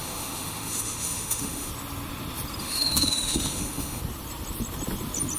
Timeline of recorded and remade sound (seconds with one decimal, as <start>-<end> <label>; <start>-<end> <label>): 0.0-1.7 remade; 1.7-2.6 recorded; 2.6-4.0 remade; 4.0-5.4 recorded